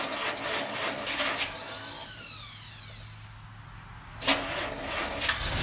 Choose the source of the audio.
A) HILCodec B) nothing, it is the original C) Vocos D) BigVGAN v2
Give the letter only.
B